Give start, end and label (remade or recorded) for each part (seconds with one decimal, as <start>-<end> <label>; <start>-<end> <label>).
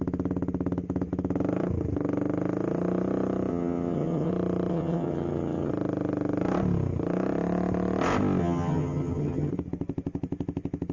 0.0-3.5 recorded; 3.5-4.3 remade; 4.3-4.7 recorded; 4.7-5.7 remade; 5.7-8.4 recorded; 8.4-9.5 remade; 9.5-10.9 recorded